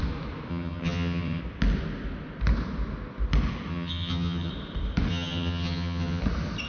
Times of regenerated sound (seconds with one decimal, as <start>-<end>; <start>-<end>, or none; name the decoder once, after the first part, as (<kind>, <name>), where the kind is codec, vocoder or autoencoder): 0.5-1.4 (vocoder, HiFi-GAN); 3.7-4.5; 5.1-6.2